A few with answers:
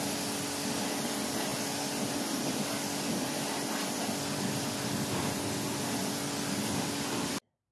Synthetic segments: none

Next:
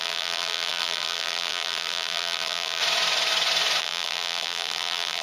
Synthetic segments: 0.0-2.8 (vocoder, BigVGAN v2); 3.8-5.2

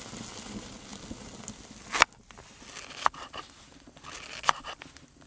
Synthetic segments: none

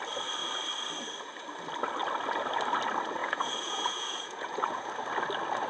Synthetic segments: 3.2-4.9 (vocoder, Vocos)